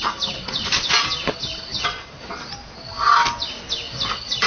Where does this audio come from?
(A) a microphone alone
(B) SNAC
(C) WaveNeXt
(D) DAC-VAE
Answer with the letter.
A